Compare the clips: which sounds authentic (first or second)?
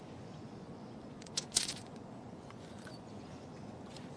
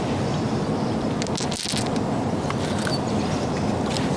second